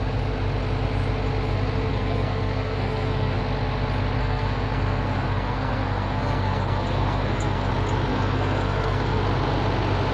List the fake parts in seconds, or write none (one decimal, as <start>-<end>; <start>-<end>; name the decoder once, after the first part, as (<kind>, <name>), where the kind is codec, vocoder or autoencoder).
1.9-3.4 (codec, SNAC); 4.2-7.7; 8.1-9.2